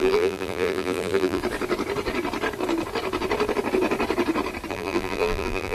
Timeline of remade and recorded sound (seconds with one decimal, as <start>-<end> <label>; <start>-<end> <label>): 0.0-1.4 remade; 1.4-4.7 recorded; 4.7-5.7 remade

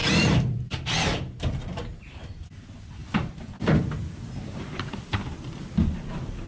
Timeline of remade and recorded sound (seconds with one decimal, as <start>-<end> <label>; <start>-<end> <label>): 0.0-1.3 remade; 1.3-3.0 recorded; 3.0-3.8 remade; 3.8-4.4 recorded; 4.4-5.2 remade; 5.2-6.5 recorded

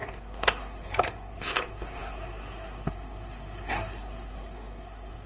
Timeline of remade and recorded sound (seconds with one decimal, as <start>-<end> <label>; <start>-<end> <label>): 0.0-5.3 remade

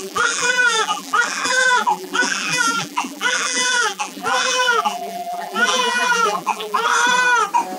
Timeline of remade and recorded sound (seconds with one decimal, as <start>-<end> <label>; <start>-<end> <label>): 0.0-6.9 remade; 6.9-7.8 recorded